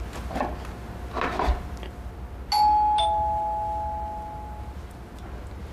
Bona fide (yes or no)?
yes